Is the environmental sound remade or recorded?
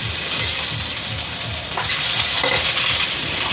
remade